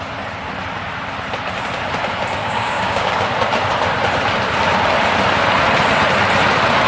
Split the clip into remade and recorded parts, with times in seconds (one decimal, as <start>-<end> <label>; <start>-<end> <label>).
0.0-2.4 recorded; 2.4-3.1 remade; 3.1-6.9 recorded